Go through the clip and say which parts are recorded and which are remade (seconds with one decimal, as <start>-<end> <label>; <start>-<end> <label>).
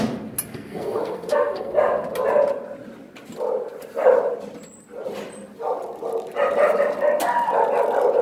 0.0-0.5 recorded; 0.5-1.7 remade; 1.7-8.2 recorded